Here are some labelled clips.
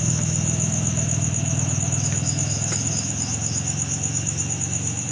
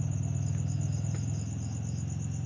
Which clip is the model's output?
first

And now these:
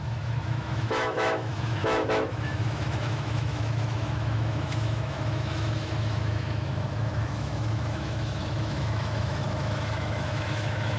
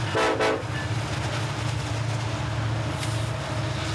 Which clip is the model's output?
first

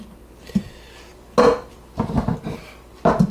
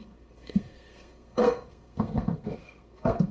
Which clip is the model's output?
second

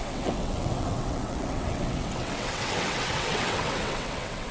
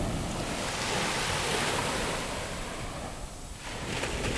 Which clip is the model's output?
first